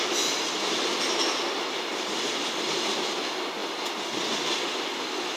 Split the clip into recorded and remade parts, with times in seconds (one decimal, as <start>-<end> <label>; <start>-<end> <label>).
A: 0.0-5.4 recorded